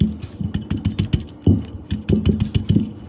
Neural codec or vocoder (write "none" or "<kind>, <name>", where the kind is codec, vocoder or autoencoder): none